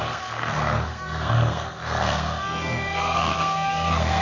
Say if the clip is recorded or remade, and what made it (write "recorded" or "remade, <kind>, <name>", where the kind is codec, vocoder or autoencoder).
remade, codec, SNAC